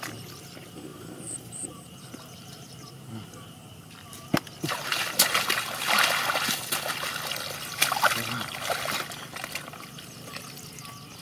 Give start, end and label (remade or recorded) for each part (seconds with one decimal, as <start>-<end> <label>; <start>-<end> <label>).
0.0-0.9 recorded; 0.9-2.9 remade; 2.9-11.2 recorded